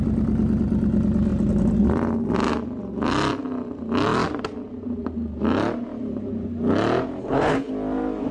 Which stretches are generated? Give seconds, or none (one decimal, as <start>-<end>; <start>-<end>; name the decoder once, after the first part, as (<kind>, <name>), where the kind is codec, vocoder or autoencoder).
7.2-7.7 (codec, HILCodec)